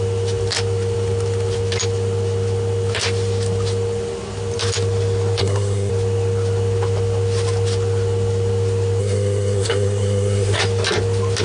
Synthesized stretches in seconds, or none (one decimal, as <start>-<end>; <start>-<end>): 5.4-5.9; 9.0-10.6